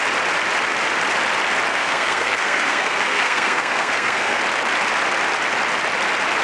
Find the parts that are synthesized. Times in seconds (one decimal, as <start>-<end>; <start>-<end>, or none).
1.7-4.4